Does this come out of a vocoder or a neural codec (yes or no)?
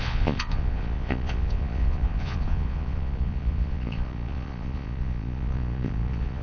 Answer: yes